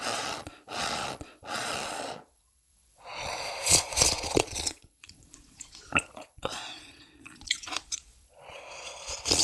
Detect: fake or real fake